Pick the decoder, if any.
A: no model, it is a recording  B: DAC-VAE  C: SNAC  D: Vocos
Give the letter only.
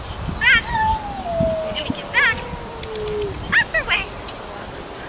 A